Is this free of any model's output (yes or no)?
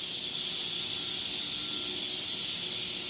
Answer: yes